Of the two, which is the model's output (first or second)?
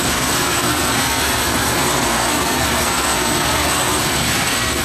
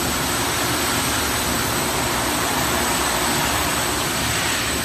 first